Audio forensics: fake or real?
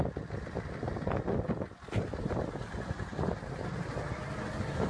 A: real